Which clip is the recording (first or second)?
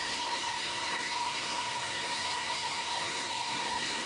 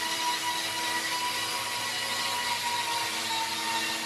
second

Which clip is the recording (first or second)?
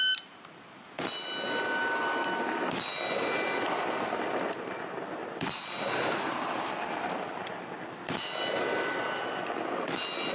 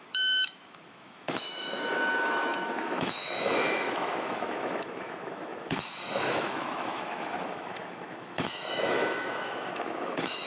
first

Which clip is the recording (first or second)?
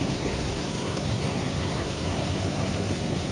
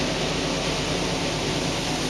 second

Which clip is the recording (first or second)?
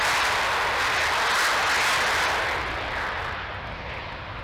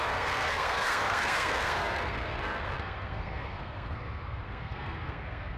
first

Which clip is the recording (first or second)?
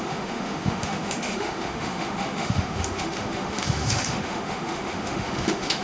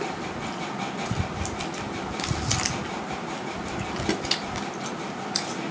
second